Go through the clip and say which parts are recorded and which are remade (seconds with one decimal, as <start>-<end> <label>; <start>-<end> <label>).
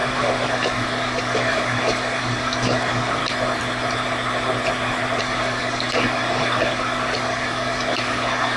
0.0-3.2 remade; 3.2-5.2 recorded; 5.2-8.6 remade